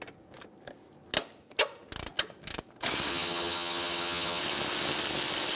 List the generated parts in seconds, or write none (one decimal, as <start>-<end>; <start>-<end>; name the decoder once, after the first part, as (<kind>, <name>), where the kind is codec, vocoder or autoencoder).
3.1-4.4 (vocoder, HiFi-GAN)